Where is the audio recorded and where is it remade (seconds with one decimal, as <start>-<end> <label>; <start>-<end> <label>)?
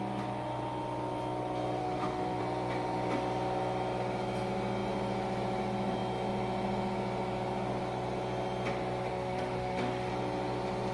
0.0-1.8 recorded; 1.8-2.4 remade; 2.4-9.1 recorded; 9.1-10.1 remade; 10.1-10.9 recorded